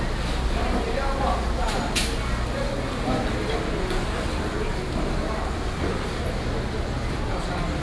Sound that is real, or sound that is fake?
real